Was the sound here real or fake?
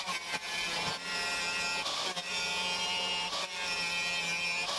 real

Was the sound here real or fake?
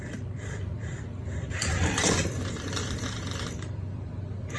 fake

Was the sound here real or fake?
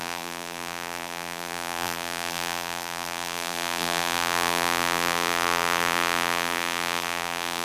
fake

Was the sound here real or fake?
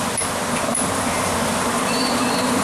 fake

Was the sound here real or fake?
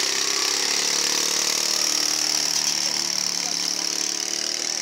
real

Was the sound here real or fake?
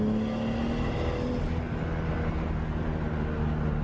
real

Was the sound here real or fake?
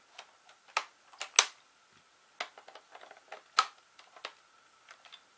real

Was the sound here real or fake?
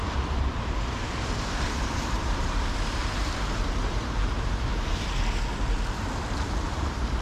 fake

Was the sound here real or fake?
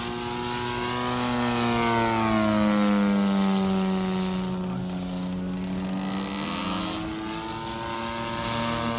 real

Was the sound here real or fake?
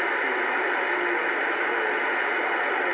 real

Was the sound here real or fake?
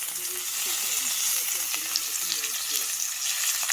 real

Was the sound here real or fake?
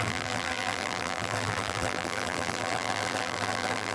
fake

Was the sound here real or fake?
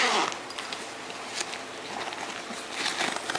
real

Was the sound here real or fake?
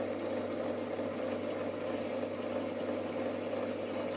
real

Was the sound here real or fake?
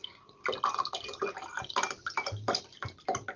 real